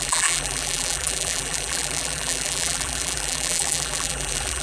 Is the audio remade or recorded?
remade